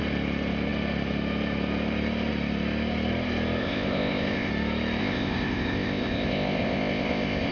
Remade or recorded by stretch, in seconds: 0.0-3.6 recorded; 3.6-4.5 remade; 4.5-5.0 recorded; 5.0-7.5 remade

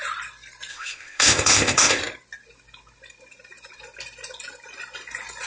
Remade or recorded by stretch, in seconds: 0.0-0.7 recorded; 0.7-2.0 remade; 2.0-5.5 recorded

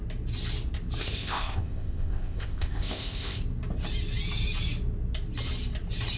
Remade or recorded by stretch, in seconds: 0.0-1.0 recorded; 1.0-3.4 remade; 3.4-6.2 recorded

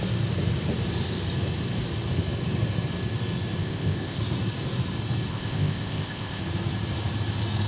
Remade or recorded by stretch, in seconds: 0.0-3.6 recorded; 3.6-4.2 remade; 4.2-5.3 recorded; 5.3-6.4 remade; 6.4-7.7 recorded

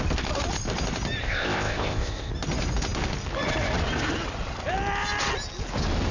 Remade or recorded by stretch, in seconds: 0.0-1.2 recorded; 1.2-2.3 remade; 2.3-6.1 recorded

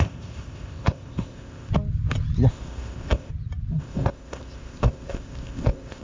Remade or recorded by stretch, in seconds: 0.0-1.7 remade; 1.7-2.5 recorded; 2.5-3.3 remade; 3.3-3.8 recorded; 3.8-6.0 remade